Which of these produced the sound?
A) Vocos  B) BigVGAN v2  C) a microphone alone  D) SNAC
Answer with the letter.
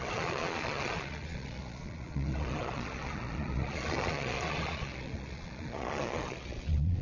A